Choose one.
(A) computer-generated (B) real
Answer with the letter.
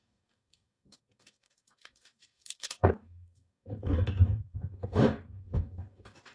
A